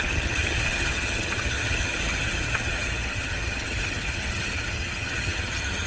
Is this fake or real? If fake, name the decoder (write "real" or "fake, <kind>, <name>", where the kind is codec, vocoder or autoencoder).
fake, vocoder, HiFi-GAN